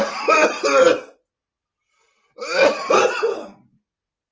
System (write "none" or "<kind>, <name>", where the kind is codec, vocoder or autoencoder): none